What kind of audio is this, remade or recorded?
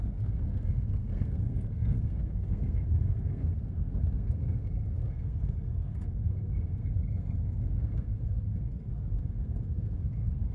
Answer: remade